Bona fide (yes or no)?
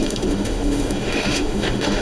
no